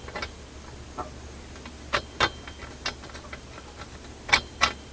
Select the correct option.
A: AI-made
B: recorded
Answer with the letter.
B